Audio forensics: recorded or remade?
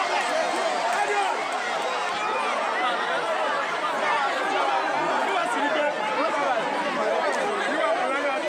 recorded